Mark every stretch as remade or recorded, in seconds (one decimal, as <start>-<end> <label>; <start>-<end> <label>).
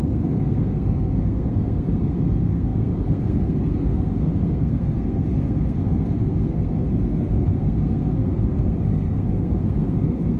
0.0-10.4 remade